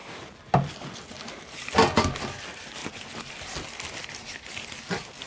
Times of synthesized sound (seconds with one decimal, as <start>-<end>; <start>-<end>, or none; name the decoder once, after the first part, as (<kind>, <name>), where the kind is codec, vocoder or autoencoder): none

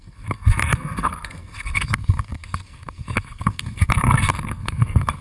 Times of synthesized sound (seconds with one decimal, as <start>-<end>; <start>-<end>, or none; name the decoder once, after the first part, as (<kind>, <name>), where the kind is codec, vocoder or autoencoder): 0.0-5.2 (codec, SNAC)